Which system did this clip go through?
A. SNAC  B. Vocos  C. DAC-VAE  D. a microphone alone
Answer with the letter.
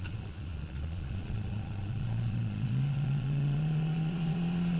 B